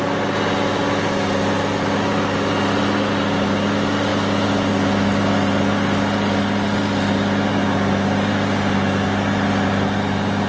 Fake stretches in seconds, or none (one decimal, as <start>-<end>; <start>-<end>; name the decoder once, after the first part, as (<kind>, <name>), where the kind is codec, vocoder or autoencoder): none